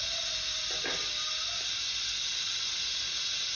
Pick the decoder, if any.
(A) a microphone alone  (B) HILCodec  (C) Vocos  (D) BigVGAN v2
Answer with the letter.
A